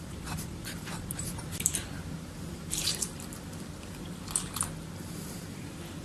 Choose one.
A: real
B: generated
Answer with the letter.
B